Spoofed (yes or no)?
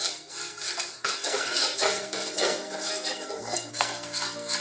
yes